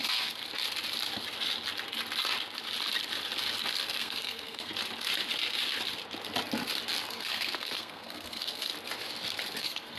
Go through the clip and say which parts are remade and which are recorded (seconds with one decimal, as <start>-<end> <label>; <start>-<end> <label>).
0.0-0.4 remade; 0.4-4.0 recorded; 4.0-4.7 remade; 4.7-7.1 recorded; 7.1-8.7 remade; 8.7-9.6 recorded; 9.6-10.0 remade